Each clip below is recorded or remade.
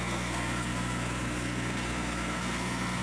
remade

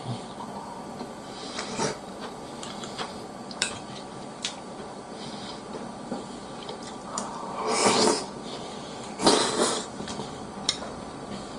remade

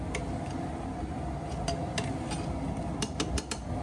recorded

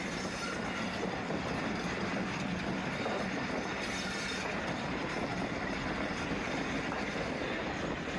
recorded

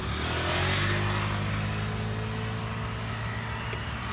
recorded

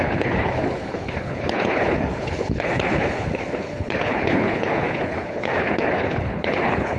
remade